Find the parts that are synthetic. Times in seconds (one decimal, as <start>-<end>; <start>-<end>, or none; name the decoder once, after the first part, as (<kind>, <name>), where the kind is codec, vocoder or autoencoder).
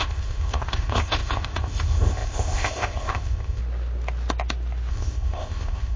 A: 0.0-3.6 (codec, ZipCodec); 4.9-6.0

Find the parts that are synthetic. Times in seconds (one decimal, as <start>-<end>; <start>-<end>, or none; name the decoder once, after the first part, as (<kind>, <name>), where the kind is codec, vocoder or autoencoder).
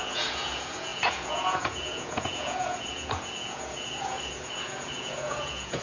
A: 0.0-5.8 (vocoder, Vocos)